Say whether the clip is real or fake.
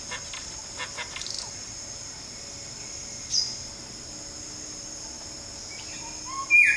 real